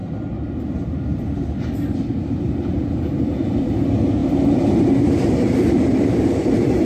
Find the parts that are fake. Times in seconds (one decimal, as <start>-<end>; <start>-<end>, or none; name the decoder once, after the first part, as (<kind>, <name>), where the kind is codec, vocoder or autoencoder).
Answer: 1.1-2.5 (vocoder, BigVGAN v2); 4.2-6.8